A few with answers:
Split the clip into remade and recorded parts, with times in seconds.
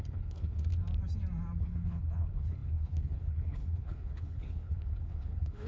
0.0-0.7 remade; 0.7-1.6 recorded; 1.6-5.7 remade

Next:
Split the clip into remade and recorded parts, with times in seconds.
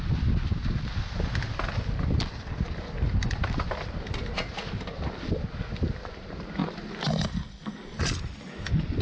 0.0-9.0 recorded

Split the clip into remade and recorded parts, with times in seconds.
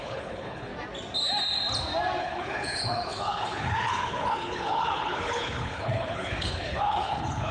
0.0-0.7 remade; 0.7-2.2 recorded; 2.2-7.5 remade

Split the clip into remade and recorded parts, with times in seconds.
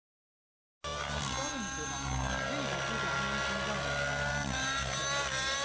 0.0-5.6 recorded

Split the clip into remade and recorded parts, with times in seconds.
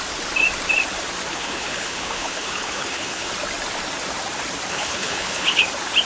0.0-1.3 recorded; 1.3-3.3 remade; 3.3-4.7 recorded; 4.7-5.6 remade; 5.6-6.0 recorded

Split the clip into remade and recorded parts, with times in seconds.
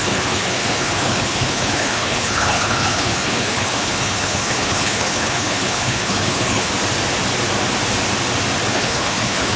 0.0-6.7 remade; 6.7-8.7 recorded; 8.7-9.6 remade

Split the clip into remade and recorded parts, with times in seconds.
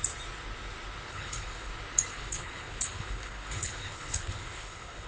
0.0-1.1 recorded; 1.1-1.7 remade; 1.7-2.1 recorded; 2.1-5.1 remade